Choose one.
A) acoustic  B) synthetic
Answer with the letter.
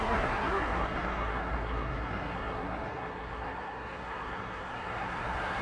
B